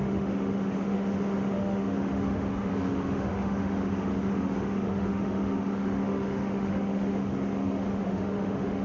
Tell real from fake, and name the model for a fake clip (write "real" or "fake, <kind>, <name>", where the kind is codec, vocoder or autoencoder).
fake, autoencoder, DAC-VAE